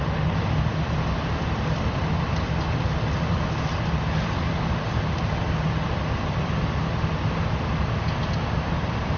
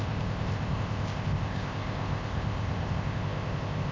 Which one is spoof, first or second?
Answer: second